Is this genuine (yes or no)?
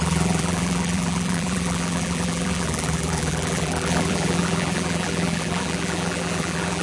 no